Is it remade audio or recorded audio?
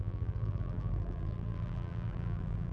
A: remade